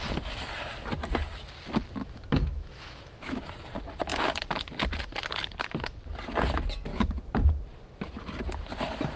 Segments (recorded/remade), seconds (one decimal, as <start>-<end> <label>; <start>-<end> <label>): 0.0-2.0 recorded; 2.0-3.5 remade; 3.5-6.9 recorded; 6.9-7.5 remade; 7.5-9.2 recorded